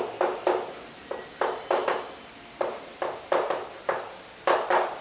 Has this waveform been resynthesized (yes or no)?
no